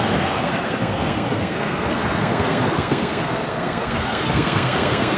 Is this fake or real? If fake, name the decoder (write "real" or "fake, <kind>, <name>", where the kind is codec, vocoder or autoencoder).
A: fake, codec, SNAC